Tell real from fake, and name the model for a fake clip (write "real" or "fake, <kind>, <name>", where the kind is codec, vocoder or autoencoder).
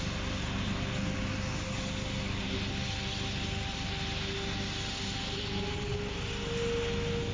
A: real